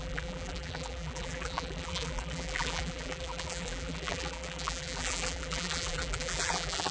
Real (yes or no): no